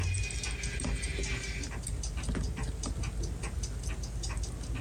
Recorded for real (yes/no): yes